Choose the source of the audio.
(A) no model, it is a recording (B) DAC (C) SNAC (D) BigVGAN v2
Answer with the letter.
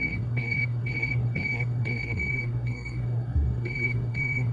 C